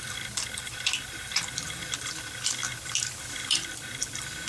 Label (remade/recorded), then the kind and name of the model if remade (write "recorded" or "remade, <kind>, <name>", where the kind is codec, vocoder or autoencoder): remade, vocoder, BigVGAN v2